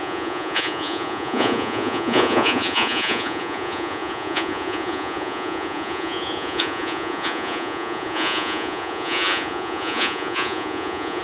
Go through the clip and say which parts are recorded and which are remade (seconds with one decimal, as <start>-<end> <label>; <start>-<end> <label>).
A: 0.0-11.2 remade